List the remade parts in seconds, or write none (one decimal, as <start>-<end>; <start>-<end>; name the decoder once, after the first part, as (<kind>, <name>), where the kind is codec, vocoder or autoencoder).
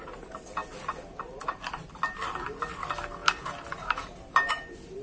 none